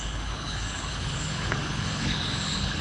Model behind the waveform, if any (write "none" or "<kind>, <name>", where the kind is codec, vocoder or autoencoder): codec, HILCodec